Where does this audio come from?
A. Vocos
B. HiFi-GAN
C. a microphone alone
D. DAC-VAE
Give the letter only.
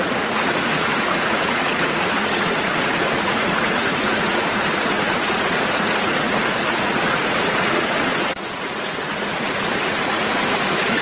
A